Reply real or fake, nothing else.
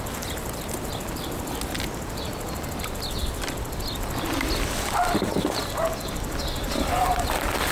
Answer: real